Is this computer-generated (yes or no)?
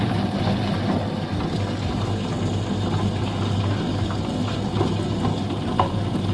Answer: no